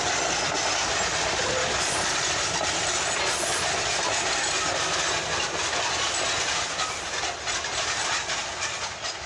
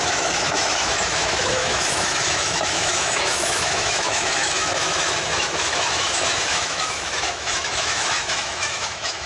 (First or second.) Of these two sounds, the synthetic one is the second